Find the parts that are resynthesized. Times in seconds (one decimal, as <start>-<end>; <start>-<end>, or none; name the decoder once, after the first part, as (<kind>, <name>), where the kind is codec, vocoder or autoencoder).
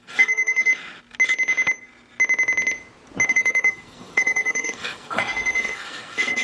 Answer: 0.0-0.7 (codec, SNAC); 3.3-6.4